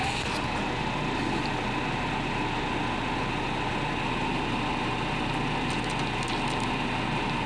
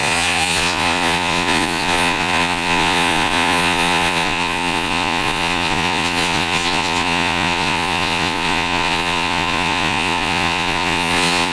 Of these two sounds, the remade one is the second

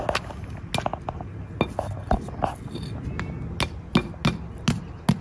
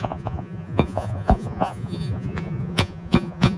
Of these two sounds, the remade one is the second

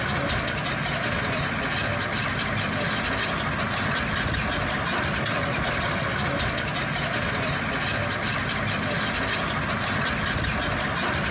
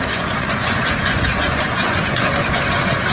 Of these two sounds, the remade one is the second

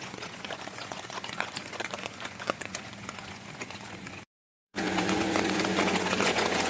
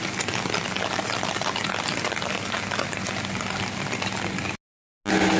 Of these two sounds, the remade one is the first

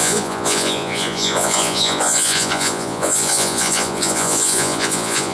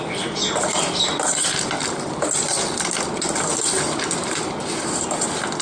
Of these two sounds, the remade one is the first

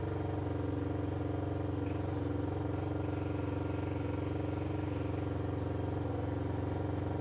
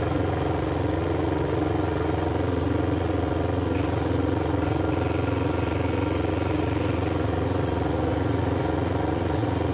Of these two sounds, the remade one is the second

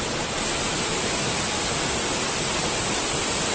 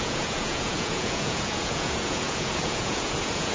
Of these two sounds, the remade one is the second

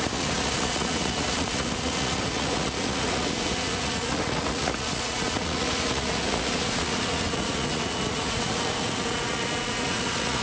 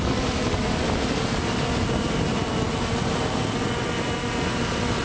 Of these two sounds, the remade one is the first